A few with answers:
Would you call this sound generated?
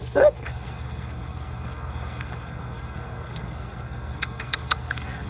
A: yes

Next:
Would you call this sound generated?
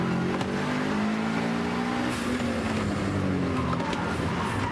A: no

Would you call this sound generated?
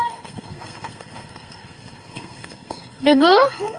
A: yes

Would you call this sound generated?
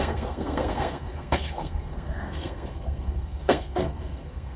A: yes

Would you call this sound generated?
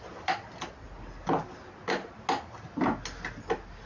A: no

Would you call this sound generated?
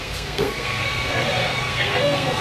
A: yes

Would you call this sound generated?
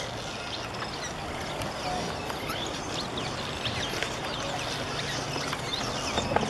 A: no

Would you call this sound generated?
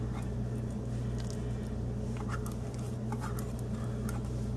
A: no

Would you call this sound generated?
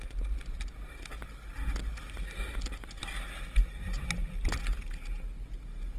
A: no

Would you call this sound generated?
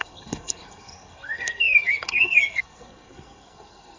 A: yes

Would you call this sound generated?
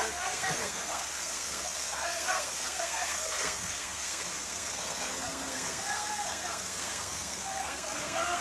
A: yes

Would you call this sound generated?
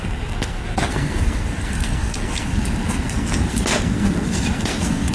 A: yes